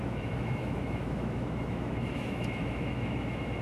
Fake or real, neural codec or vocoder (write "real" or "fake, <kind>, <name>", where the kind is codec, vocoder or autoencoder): fake, autoencoder, DAC-VAE